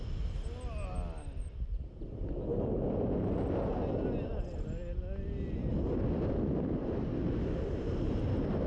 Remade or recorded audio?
recorded